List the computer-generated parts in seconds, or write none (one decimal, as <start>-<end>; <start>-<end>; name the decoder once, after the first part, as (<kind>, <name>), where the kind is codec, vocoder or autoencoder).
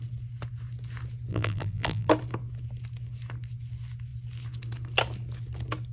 1.3-2.1 (vocoder, BigVGAN v2)